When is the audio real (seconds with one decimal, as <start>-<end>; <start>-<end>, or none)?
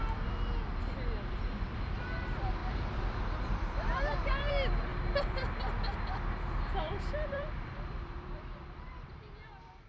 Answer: none